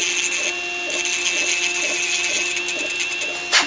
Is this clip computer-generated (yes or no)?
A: no